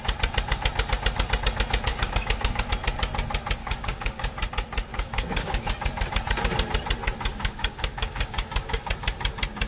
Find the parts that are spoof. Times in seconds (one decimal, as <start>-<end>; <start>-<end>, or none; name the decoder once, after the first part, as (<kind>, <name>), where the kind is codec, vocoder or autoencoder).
1.9-2.7 (codec, DAC); 3.6-4.5; 4.9-5.7; 7.3-8.9